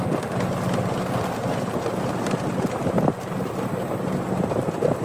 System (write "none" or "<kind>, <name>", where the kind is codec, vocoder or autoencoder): none